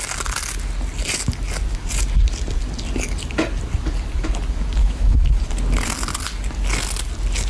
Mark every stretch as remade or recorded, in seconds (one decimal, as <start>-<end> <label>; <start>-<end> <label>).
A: 0.0-4.8 recorded; 4.8-5.4 remade; 5.4-7.5 recorded